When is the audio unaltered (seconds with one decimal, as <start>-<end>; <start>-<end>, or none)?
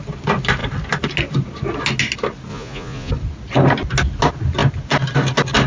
0.0-2.5; 3.1-5.7